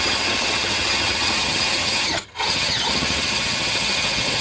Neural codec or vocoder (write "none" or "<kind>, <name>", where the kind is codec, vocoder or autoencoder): vocoder, HiFi-GAN